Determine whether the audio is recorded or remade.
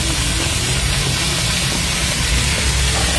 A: recorded